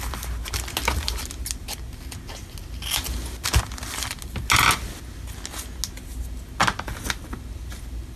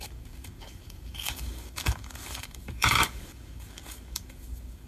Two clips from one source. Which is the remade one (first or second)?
second